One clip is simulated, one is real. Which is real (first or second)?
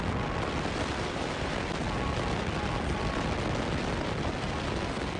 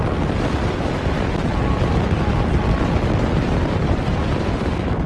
first